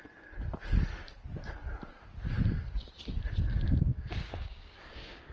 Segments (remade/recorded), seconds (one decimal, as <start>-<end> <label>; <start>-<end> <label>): 0.0-3.9 recorded; 3.9-5.3 remade